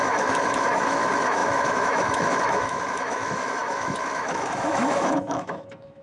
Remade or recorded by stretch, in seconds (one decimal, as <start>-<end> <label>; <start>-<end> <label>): 0.0-6.0 remade